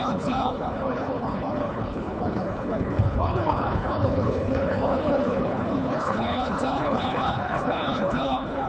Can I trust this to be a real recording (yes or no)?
no